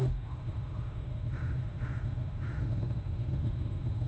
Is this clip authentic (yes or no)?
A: no